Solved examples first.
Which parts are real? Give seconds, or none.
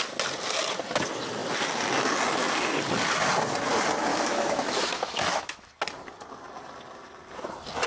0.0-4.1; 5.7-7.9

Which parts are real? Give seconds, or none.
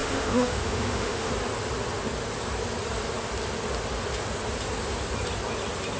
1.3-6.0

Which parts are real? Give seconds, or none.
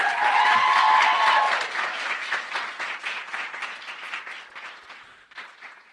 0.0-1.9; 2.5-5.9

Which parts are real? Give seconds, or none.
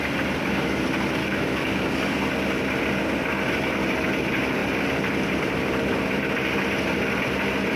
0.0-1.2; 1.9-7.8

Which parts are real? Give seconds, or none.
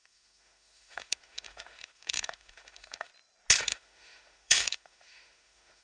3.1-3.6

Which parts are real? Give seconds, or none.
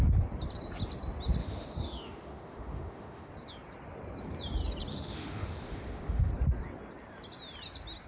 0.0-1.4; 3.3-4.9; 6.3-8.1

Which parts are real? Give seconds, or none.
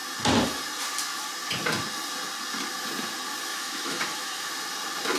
0.0-3.5; 4.5-5.2